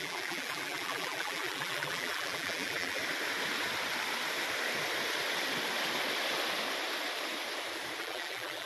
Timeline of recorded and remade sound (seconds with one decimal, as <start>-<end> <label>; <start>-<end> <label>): 0.0-3.0 remade; 3.0-8.0 recorded; 8.0-8.7 remade